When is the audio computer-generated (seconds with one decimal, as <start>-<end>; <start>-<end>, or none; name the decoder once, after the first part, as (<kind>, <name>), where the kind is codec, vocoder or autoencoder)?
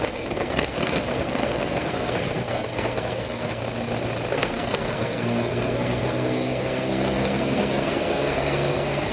0.0-3.6 (codec, SNAC); 4.3-9.1